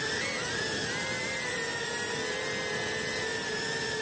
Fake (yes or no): no